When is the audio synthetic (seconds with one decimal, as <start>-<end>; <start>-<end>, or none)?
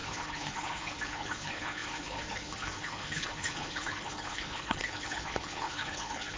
0.0-6.4